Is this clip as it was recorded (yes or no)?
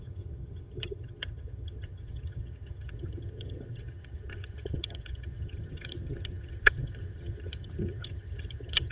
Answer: no